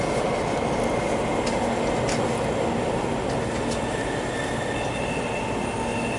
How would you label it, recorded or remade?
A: recorded